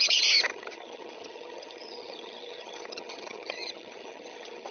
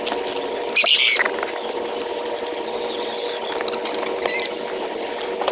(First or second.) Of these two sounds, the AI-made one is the first